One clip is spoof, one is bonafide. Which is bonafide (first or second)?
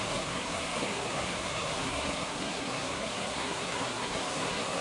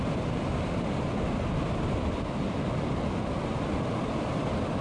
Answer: second